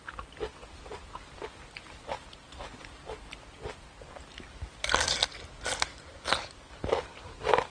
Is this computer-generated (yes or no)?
no